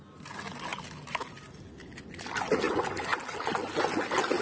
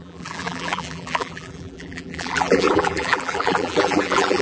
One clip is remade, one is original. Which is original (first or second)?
first